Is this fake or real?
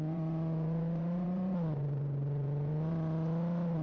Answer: fake